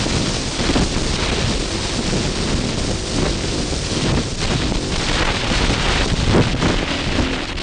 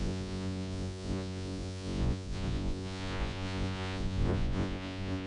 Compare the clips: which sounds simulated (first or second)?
second